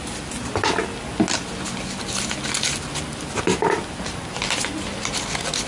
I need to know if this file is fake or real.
real